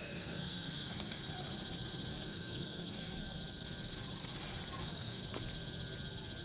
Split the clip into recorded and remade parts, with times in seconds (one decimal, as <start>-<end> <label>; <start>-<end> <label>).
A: 0.0-1.2 remade; 1.2-2.1 recorded; 2.1-3.4 remade; 3.4-4.8 recorded; 4.8-5.2 remade; 5.2-6.4 recorded

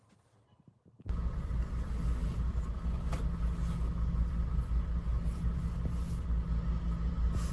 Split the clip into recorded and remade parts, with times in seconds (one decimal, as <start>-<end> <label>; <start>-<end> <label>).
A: 0.0-7.5 recorded

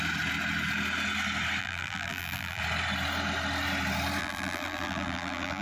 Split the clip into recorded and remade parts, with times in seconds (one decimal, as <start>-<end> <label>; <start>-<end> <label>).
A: 0.0-1.6 recorded; 1.6-2.6 remade; 2.6-4.2 recorded; 4.2-5.6 remade

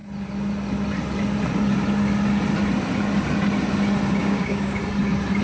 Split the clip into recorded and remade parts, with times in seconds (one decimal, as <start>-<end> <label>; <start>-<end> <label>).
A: 0.0-4.2 recorded; 4.2-4.8 remade; 4.8-5.4 recorded

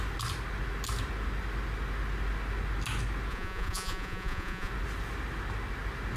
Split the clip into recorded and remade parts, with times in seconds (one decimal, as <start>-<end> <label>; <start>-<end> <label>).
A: 0.0-3.3 recorded; 3.3-4.7 remade; 4.7-6.2 recorded